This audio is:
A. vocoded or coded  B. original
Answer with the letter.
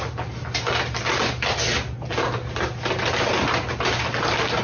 B